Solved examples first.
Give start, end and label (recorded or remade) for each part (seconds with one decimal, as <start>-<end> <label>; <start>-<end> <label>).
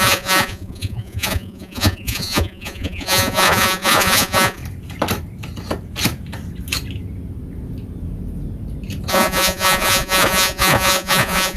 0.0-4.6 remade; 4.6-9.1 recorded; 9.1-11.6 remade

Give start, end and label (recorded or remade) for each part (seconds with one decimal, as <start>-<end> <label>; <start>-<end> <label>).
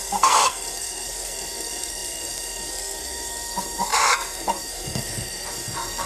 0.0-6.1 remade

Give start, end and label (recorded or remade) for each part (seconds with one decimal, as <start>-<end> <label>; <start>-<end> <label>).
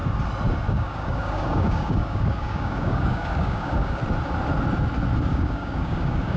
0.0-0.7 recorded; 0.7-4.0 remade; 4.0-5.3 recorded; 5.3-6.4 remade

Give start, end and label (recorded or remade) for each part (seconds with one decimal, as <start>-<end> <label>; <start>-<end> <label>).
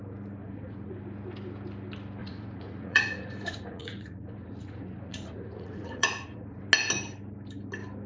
0.0-0.4 recorded; 0.4-1.0 remade; 1.0-2.2 recorded; 2.2-6.6 remade; 6.6-8.1 recorded